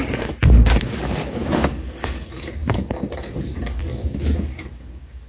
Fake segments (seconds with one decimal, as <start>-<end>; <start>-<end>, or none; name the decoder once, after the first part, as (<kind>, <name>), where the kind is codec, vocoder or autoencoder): 0.0-5.3 (codec, DAC)